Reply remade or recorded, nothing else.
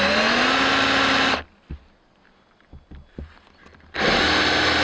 recorded